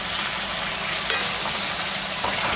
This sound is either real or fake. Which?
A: real